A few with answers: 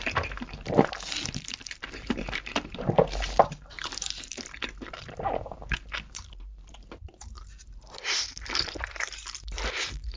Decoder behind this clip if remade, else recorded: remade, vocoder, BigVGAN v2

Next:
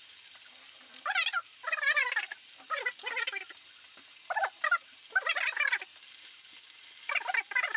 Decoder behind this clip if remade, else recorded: recorded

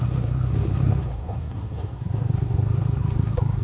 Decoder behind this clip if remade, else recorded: remade, codec, SNAC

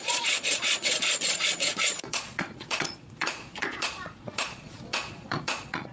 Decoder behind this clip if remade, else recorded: remade, vocoder, Vocos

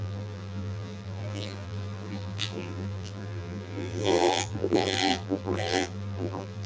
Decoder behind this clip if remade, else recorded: remade, vocoder, BigVGAN v2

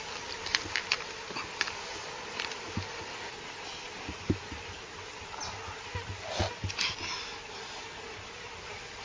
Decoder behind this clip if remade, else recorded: recorded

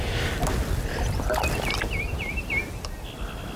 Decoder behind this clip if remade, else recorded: recorded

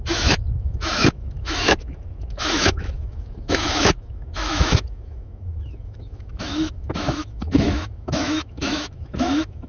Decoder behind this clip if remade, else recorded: remade, autoencoder, DAC-VAE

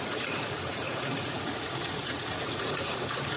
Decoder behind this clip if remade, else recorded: remade, vocoder, Vocos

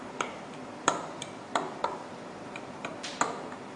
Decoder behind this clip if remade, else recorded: recorded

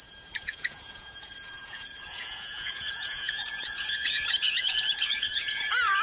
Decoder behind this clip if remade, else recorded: remade, vocoder, Vocos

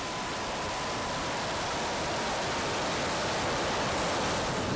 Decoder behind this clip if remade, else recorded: recorded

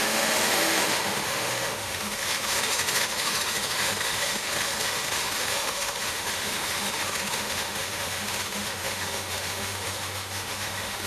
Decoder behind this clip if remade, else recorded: remade, autoencoder, DAC-VAE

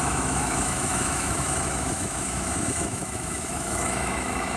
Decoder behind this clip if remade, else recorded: remade, autoencoder, DAC-VAE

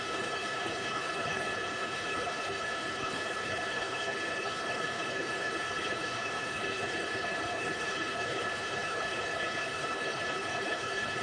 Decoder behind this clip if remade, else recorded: remade, codec, HILCodec